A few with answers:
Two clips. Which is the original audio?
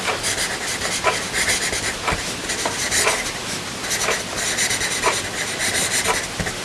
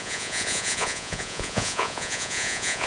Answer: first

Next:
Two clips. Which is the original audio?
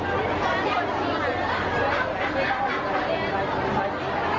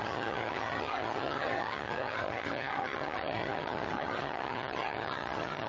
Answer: first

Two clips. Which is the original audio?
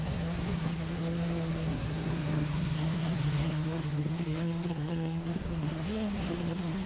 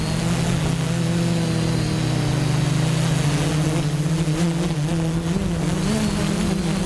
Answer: second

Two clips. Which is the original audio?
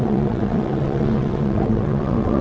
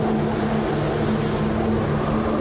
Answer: second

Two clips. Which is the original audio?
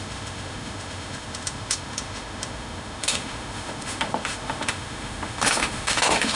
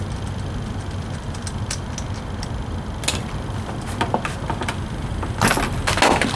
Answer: second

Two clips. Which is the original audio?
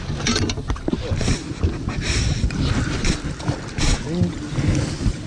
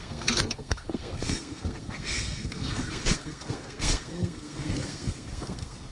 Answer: first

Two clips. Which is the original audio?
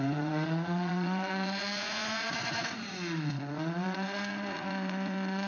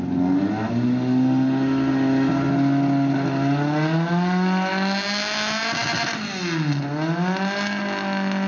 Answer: second